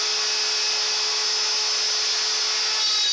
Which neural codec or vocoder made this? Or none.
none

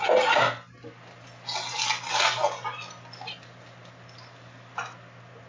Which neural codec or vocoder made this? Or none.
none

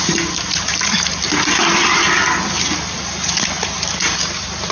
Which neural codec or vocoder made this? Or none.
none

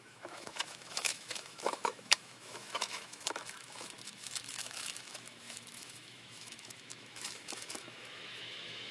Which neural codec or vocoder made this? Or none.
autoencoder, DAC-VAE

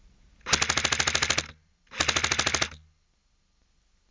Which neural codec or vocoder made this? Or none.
none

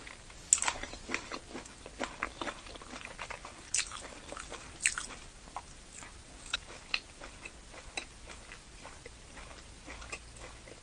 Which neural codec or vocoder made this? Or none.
none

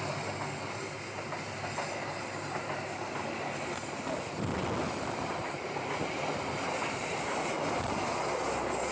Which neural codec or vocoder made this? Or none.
none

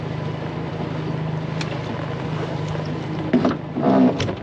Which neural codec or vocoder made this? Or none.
none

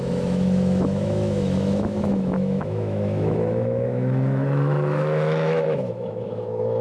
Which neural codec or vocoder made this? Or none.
autoencoder, DAC-VAE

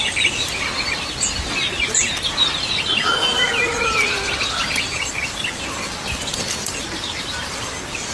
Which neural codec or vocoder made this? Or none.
none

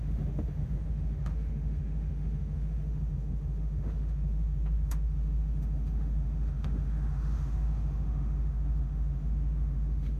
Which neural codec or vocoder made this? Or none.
autoencoder, DAC-VAE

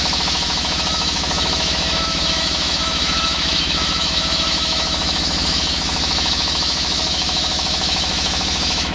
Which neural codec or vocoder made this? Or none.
autoencoder, DAC-VAE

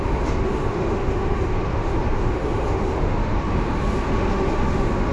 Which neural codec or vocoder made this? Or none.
autoencoder, DAC-VAE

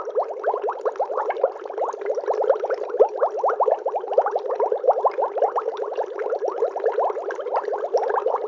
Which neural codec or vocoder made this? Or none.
none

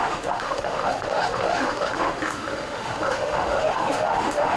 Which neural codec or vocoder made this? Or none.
autoencoder, DAC-VAE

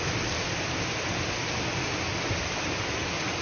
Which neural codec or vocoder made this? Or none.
none